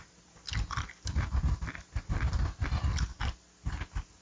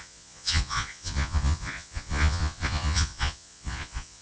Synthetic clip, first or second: second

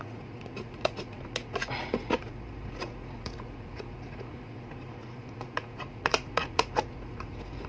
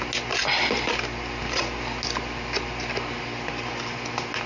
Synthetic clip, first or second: first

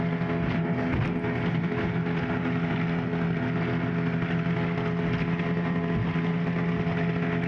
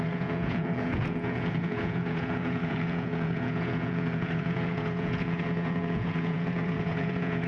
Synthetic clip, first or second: second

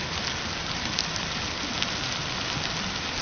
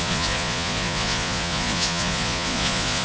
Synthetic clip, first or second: second